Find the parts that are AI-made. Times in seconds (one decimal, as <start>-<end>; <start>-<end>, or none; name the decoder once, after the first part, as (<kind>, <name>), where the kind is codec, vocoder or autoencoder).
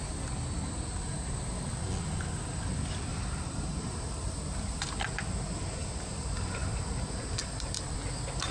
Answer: 3.1-4.8 (vocoder, BigVGAN v2); 5.8-7.7